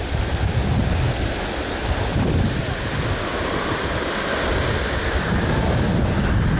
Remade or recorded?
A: recorded